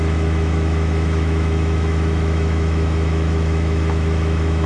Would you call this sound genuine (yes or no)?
no